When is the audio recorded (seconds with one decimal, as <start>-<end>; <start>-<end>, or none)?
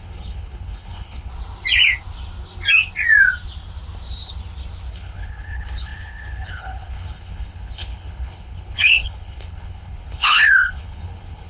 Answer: 1.3-4.9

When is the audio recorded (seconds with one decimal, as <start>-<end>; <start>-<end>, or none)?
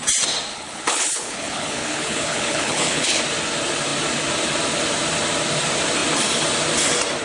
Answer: 0.0-0.5; 3.2-7.2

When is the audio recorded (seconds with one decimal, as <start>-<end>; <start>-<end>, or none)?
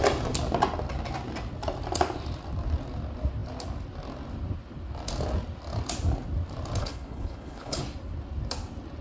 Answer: 0.0-6.8; 7.8-9.0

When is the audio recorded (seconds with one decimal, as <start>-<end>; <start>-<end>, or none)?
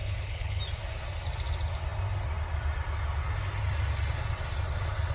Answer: 0.6-5.1